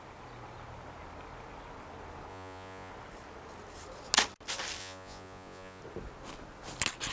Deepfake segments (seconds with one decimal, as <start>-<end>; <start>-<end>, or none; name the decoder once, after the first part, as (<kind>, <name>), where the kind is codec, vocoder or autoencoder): 2.3-2.9 (vocoder, Vocos); 4.8-5.8